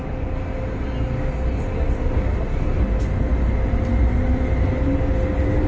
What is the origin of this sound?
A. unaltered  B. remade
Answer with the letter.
A